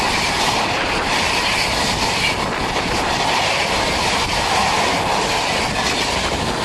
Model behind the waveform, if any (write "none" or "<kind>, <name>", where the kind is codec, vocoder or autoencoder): none